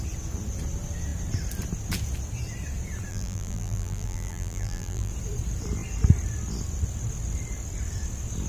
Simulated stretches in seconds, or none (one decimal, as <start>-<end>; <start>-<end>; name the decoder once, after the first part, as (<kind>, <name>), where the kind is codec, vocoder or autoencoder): 3.1-5.1 (vocoder, BigVGAN v2)